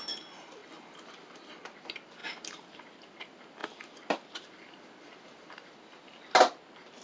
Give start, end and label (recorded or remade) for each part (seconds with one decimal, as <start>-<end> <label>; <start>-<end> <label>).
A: 0.0-7.0 recorded